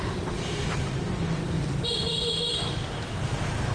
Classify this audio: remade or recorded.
recorded